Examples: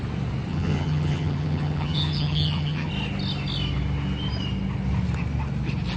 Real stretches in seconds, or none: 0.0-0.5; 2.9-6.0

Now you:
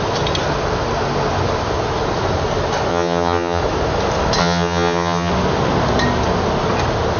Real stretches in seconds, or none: 0.0-2.9; 3.6-4.4; 5.3-7.2

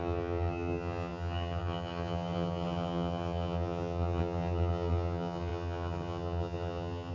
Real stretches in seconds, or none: none